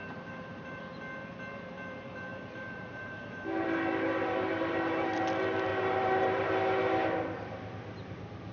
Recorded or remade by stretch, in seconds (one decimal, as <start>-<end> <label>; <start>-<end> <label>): 0.0-0.8 remade; 0.8-2.3 recorded; 2.3-5.2 remade; 5.2-5.7 recorded; 5.7-6.5 remade; 6.5-8.5 recorded